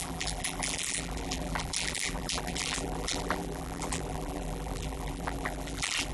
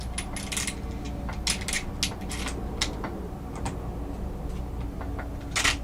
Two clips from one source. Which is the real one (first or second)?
second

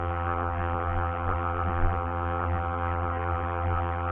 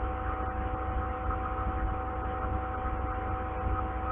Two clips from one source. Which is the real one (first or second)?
second